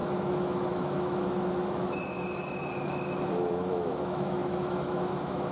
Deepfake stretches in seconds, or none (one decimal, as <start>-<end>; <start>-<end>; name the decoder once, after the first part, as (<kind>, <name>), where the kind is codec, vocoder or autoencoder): 0.0-5.5 (autoencoder, DAC-VAE)